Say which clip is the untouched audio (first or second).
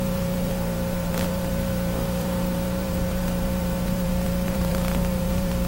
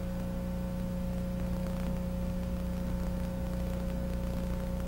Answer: second